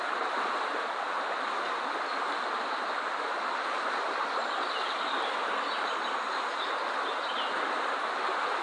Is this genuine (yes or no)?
yes